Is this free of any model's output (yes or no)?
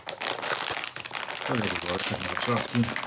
yes